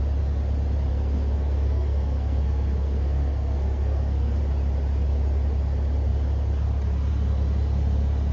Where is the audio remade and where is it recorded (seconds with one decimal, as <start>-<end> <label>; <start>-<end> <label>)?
0.0-0.9 recorded; 0.9-4.4 remade; 4.4-8.3 recorded